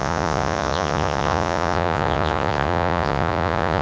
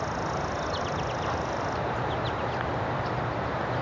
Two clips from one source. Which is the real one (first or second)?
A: second